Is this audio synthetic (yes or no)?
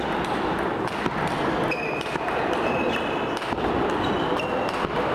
no